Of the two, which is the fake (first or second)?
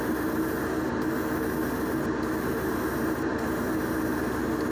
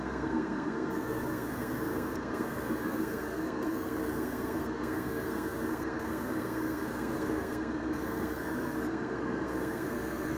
second